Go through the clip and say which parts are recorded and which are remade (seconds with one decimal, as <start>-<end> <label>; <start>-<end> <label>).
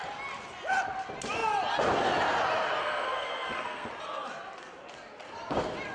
0.0-2.8 recorded; 2.8-3.9 remade; 3.9-5.9 recorded